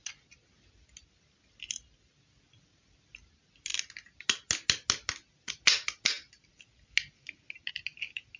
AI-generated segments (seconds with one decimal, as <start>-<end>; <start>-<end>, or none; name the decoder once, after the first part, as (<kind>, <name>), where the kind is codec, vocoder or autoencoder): 0.0-0.5 (vocoder, Vocos)